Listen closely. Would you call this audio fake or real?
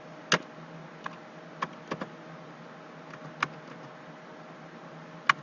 real